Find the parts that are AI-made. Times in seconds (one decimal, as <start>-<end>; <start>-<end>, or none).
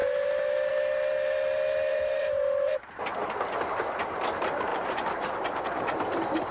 0.0-0.7; 1.9-2.7; 4.7-5.6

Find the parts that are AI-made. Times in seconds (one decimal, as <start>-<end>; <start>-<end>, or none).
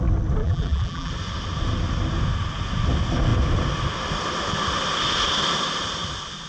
0.4-1.1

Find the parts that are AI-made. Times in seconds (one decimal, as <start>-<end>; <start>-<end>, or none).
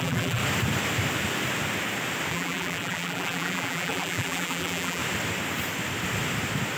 0.0-0.4; 2.3-5.0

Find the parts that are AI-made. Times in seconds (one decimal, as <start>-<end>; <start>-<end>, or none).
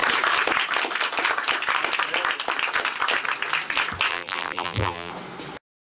4.1-5.1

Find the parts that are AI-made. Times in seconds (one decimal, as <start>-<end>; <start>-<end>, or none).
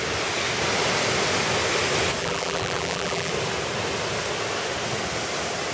2.2-3.3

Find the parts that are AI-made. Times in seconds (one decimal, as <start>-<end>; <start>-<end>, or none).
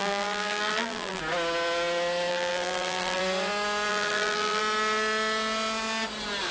0.0-1.2; 2.3-3.2; 3.9-4.6